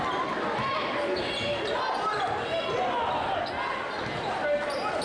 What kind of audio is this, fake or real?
real